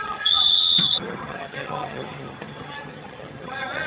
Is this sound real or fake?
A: fake